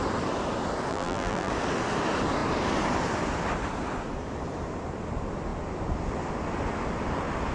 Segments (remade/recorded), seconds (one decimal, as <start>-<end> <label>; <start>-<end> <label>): 0.0-0.9 recorded; 0.9-1.5 remade; 1.5-7.5 recorded